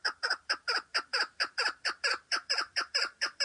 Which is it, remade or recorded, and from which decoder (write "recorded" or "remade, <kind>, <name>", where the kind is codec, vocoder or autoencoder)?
remade, vocoder, BigVGAN v2